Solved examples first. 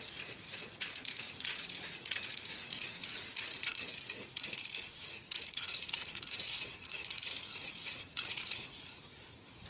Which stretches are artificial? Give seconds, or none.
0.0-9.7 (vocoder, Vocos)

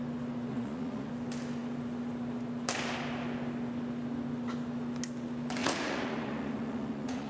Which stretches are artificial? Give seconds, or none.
0.5-1.1 (vocoder, Vocos); 5.6-7.3

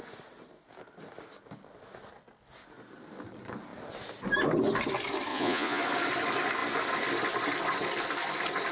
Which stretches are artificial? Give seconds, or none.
5.3-5.8 (vocoder, Vocos)

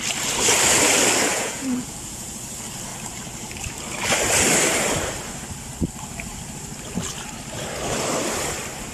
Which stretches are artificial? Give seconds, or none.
1.3-2.3 (vocoder, Vocos)

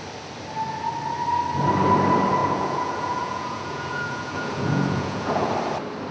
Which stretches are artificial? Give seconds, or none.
2.4-5.5 (vocoder, Vocos)

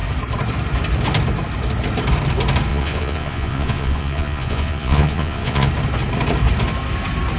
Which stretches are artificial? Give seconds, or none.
2.7-5.7 (vocoder, Vocos)